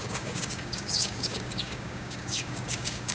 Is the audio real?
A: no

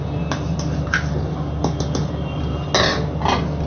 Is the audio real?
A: yes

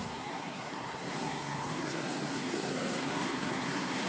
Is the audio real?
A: no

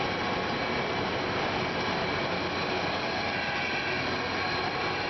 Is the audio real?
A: yes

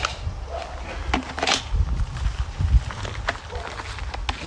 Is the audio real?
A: yes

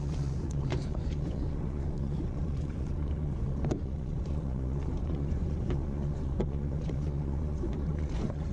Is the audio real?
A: no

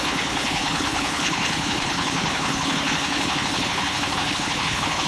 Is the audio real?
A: no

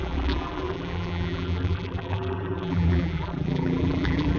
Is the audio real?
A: no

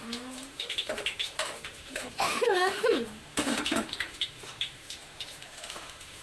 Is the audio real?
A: no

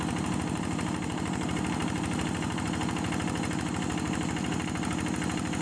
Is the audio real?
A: yes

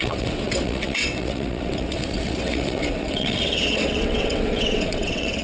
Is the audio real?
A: no